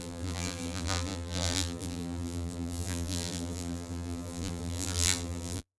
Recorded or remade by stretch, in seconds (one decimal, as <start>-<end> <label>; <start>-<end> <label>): 0.0-5.8 remade